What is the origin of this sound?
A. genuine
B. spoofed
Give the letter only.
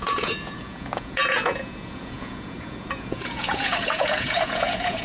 B